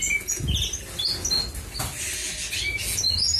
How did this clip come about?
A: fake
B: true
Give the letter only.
B